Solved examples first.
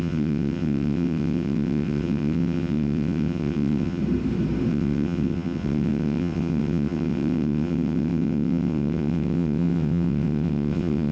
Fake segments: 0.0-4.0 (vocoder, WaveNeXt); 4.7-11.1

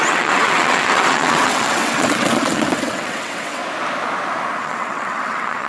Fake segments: 0.0-3.6 (vocoder, WaveNeXt); 4.6-5.7

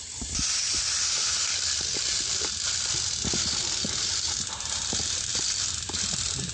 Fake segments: none

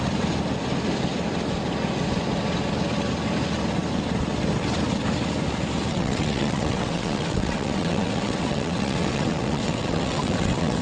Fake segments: 5.9-10.8 (vocoder, WaveNeXt)

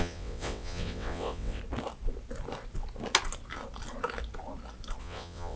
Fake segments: 0.0-1.6 (vocoder, WaveNeXt); 5.0-5.6

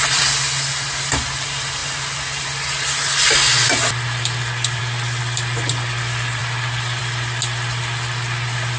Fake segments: none